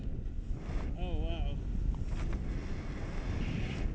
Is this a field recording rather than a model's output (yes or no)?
yes